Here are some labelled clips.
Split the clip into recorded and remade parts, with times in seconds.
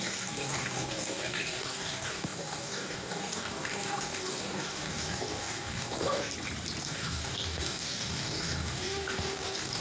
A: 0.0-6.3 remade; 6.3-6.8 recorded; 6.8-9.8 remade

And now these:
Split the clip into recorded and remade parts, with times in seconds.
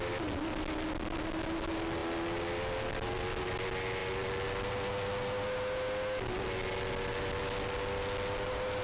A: 0.0-8.8 recorded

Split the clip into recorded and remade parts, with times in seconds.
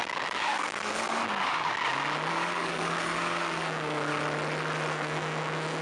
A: 0.0-1.8 remade; 1.8-2.3 recorded; 2.3-4.1 remade; 4.1-4.9 recorded; 4.9-5.8 remade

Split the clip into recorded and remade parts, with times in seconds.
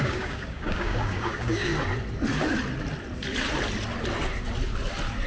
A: 0.0-1.7 remade; 1.7-5.3 recorded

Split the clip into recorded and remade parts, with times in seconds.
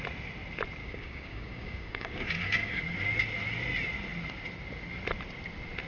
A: 0.0-0.8 recorded; 0.8-2.8 remade; 2.8-5.9 recorded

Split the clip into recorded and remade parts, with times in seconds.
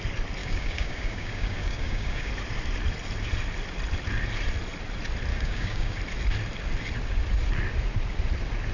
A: 0.0-0.4 recorded; 0.4-2.3 remade; 2.3-5.3 recorded; 5.3-6.0 remade; 6.0-8.7 recorded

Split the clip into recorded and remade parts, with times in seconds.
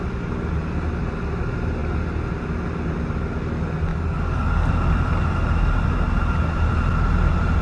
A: 0.0-3.9 recorded; 3.9-4.7 remade; 4.7-7.6 recorded